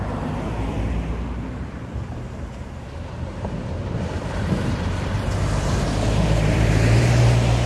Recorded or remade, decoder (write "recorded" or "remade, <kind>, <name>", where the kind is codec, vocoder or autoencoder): remade, vocoder, BigVGAN v2